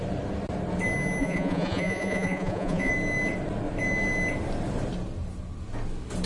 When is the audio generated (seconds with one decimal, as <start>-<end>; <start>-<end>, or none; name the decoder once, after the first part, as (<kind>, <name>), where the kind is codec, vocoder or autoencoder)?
1.2-2.9 (vocoder, Vocos)

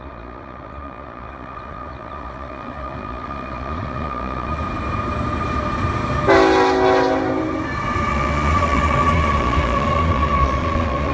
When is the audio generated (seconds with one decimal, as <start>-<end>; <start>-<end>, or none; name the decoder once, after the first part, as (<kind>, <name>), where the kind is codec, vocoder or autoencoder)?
0.0-4.6 (vocoder, Vocos); 8.1-11.1

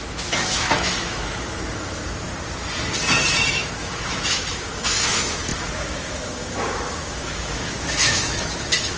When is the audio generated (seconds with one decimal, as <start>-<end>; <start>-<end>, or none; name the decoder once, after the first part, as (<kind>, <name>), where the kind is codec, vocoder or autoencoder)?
0.0-2.0 (autoencoder, DAC-VAE); 3.5-9.0

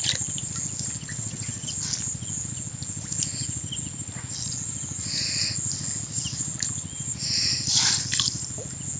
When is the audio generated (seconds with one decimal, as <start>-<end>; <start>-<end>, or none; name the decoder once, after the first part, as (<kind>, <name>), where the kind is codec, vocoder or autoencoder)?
1.1-1.7 (vocoder, WaveNeXt)

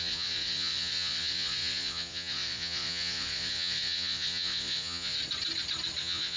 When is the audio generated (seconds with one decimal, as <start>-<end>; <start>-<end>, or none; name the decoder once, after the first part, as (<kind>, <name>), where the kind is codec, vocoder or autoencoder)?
0.0-5.2 (vocoder, Vocos); 6.0-6.4